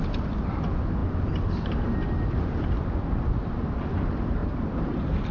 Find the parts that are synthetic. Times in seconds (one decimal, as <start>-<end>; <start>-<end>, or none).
4.4-5.3